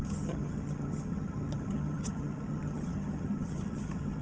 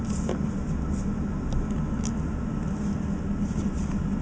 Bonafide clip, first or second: second